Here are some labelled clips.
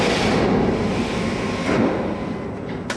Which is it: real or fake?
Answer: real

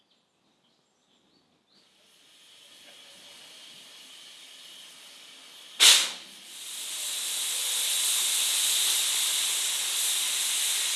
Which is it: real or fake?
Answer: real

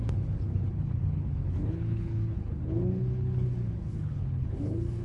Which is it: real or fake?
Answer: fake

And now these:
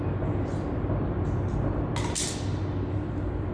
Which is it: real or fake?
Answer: real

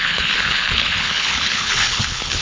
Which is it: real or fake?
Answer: fake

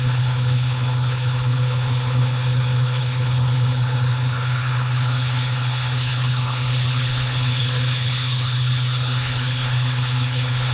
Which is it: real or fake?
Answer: fake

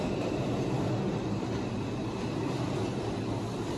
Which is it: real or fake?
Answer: real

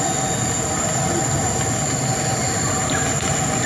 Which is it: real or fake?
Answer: real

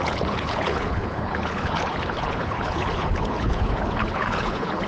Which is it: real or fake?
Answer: fake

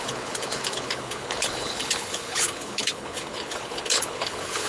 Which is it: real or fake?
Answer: fake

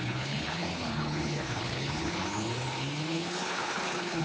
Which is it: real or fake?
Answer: fake